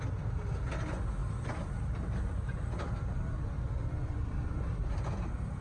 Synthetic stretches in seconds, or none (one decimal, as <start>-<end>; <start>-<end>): 1.2-4.6